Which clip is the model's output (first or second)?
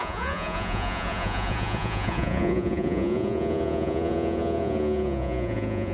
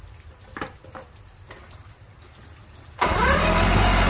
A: first